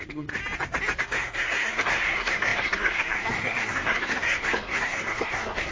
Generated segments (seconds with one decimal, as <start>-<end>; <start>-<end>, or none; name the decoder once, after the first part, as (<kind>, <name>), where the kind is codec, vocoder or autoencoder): 0.0-0.4 (codec, SNAC); 1.0-5.7